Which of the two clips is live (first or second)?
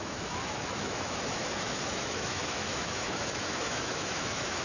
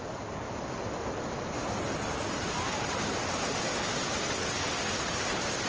second